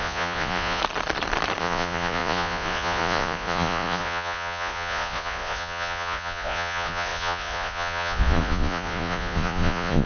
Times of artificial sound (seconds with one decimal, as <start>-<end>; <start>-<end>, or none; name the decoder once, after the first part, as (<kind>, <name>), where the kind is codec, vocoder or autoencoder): 0.0-0.8 (vocoder, Vocos); 1.6-10.1